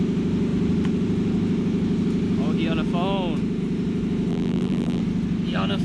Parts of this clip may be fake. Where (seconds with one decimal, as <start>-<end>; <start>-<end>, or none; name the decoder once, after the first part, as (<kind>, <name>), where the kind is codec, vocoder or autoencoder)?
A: 4.3-5.0 (vocoder, BigVGAN v2)